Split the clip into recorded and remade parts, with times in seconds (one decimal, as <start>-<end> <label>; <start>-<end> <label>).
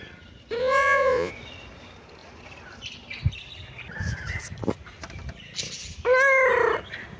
0.0-0.6 recorded; 0.6-1.3 remade; 1.3-7.2 recorded